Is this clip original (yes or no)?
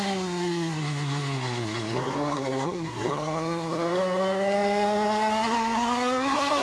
no